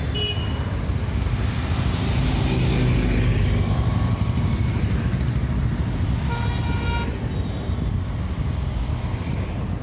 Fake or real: real